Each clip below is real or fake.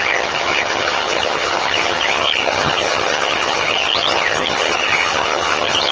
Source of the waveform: fake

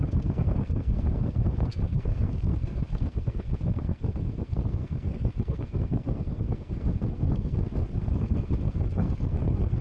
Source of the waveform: fake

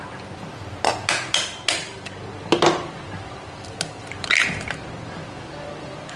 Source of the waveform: real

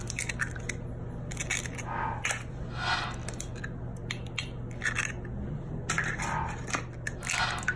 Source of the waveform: real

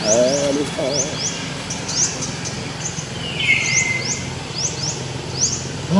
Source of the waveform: real